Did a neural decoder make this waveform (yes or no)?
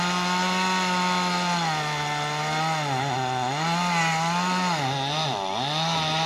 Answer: no